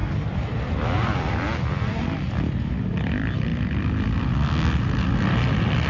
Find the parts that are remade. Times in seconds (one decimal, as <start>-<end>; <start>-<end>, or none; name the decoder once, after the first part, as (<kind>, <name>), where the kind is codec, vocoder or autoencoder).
0.0-3.5 (vocoder, BigVGAN v2); 5.2-5.9